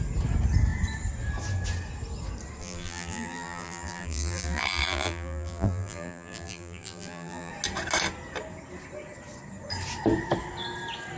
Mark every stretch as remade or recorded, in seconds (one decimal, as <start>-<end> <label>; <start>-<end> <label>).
0.0-2.6 recorded; 2.6-7.5 remade; 7.5-11.2 recorded